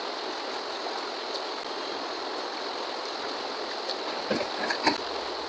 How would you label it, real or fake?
real